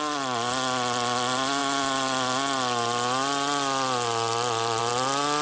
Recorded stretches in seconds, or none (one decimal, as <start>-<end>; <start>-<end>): 0.0-5.4